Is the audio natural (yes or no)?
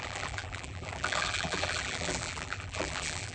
no